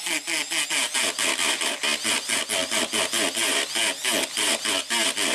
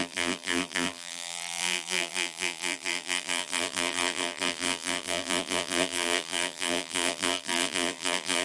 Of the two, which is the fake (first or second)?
second